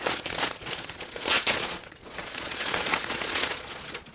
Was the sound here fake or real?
fake